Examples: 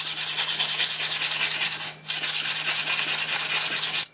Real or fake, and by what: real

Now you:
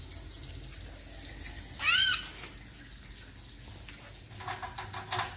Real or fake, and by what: real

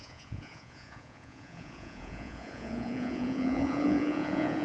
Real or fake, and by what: fake, vocoder, Vocos